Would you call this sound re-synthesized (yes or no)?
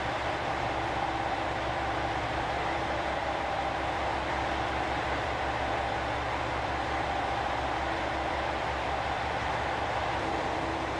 yes